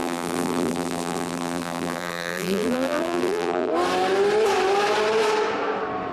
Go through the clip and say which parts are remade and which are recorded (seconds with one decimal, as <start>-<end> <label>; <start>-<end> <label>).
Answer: 0.0-3.7 remade; 3.7-6.1 recorded